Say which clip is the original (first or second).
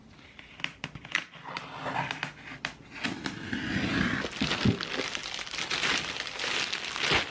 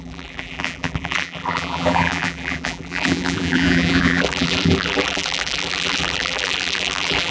first